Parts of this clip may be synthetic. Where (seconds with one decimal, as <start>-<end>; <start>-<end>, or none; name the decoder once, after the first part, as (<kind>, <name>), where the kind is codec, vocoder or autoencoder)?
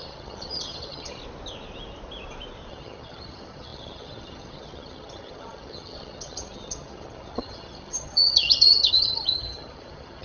0.0-1.2 (vocoder, HiFi-GAN); 2.7-10.2